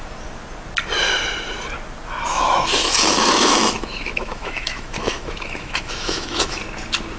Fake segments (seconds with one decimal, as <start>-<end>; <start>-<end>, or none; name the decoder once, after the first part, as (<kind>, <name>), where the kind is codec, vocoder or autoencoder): 2.3-6.6 (autoencoder, DAC-VAE)